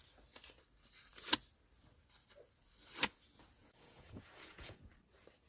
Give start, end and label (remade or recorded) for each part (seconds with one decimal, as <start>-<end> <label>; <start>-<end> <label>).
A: 0.0-3.6 recorded; 3.6-4.9 remade; 4.9-5.5 recorded